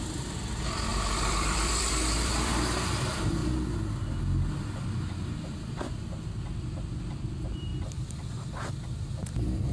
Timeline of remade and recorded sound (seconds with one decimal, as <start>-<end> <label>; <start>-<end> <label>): 0.0-3.4 remade; 3.4-6.7 recorded; 6.7-7.7 remade; 7.7-8.7 recorded; 8.7-9.7 remade